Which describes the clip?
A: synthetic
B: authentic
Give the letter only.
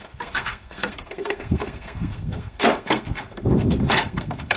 A